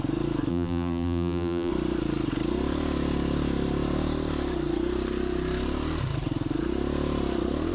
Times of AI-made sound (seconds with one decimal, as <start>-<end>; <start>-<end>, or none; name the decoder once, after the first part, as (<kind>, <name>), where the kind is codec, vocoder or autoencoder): 0.5-1.7 (vocoder, BigVGAN v2)